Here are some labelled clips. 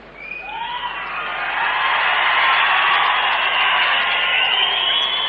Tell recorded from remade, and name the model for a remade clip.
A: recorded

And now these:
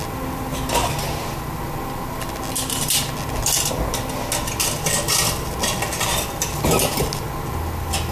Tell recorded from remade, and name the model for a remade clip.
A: recorded